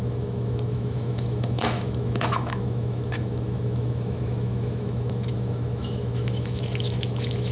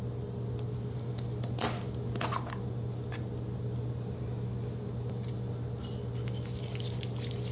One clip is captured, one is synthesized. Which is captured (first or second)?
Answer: second